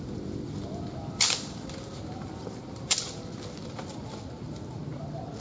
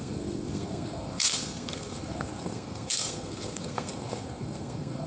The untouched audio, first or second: first